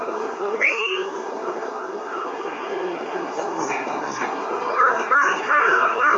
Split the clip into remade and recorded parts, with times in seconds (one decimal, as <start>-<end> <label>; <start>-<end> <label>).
0.0-6.2 remade